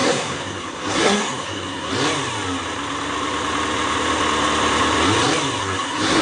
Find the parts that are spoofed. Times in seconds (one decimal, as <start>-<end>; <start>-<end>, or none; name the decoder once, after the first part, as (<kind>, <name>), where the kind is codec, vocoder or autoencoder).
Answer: 0.0-1.9 (codec, SNAC); 5.6-6.2

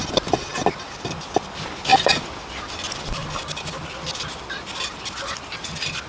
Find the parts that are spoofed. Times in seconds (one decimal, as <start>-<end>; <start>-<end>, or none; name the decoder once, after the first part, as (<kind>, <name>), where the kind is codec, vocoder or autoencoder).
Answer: none

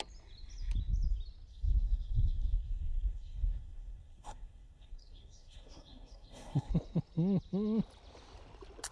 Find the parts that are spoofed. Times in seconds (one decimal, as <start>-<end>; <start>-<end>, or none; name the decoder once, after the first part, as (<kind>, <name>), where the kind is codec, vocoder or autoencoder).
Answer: 1.5-6.7 (codec, SNAC)

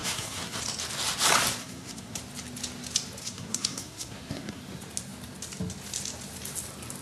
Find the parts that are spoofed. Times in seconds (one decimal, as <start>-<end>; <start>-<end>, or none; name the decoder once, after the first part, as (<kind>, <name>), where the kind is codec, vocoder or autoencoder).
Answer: 0.0-0.6 (codec, SNAC); 1.6-2.2; 3.2-4.6

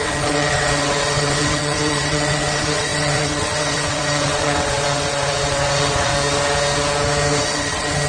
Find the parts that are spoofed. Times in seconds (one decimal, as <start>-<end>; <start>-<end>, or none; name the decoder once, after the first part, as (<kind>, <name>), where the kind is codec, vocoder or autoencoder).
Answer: 0.0-6.1 (vocoder, WaveNeXt); 7.4-8.1